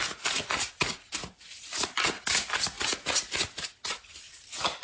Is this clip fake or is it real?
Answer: real